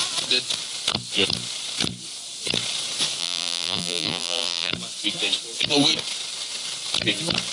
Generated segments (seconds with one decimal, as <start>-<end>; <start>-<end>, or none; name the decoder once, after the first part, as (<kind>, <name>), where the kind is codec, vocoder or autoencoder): 3.2-4.7 (vocoder, BigVGAN v2)

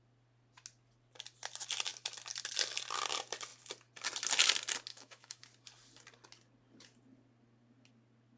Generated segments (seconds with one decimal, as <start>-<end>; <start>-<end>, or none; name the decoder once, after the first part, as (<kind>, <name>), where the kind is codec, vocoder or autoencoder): 4.9-5.4 (autoencoder, DAC-VAE)